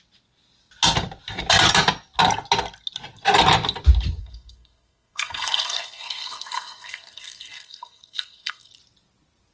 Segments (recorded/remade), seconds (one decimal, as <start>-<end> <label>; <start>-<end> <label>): 0.0-4.2 recorded; 4.2-8.7 remade; 8.7-9.5 recorded